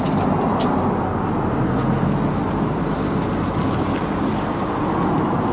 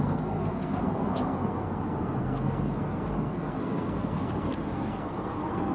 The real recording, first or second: first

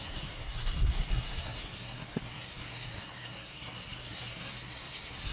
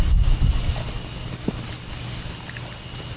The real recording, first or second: second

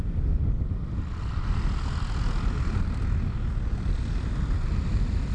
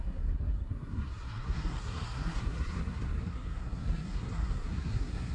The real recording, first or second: first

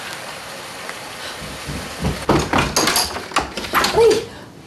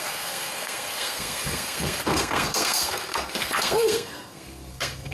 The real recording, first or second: first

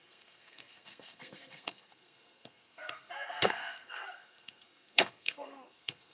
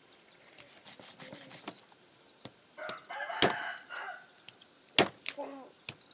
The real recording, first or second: second